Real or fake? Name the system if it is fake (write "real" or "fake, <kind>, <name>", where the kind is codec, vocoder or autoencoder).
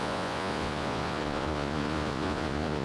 fake, vocoder, Vocos